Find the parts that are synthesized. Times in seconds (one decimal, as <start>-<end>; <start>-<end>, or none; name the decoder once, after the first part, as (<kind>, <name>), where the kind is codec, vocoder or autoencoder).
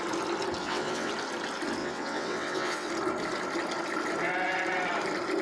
0.6-1.1 (vocoder, WaveNeXt); 1.8-2.9